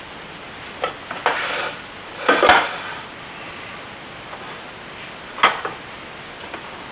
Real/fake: real